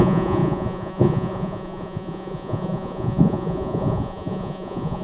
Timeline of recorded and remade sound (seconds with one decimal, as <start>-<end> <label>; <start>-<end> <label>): 0.0-5.0 remade